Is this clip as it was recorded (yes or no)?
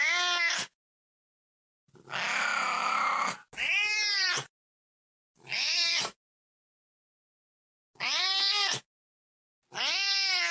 yes